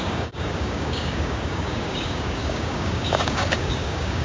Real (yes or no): no